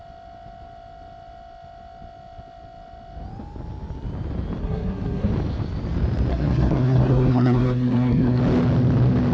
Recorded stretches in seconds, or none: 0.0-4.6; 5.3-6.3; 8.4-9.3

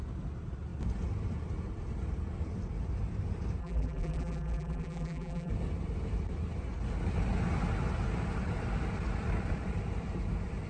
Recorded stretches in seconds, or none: 0.0-3.6; 5.5-10.7

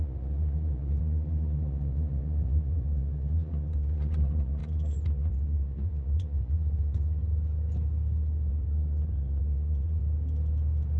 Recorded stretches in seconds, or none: 7.2-8.5; 10.0-11.0

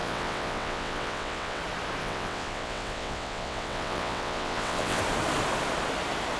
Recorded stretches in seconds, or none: 1.6-2.0; 5.0-6.4

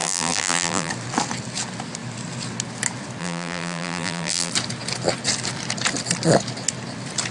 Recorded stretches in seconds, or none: 0.9-3.2; 4.5-7.3

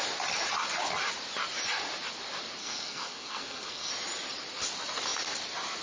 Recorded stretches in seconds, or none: 0.0-2.6; 3.9-5.8

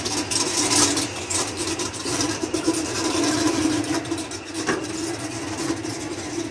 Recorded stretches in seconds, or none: 0.0-2.1; 6.0-6.5

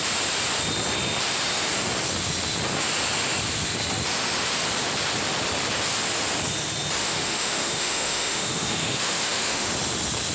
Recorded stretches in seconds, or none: 0.0-7.0; 9.7-10.3